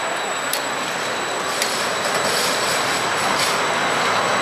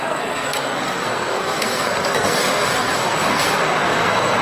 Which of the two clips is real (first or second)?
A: first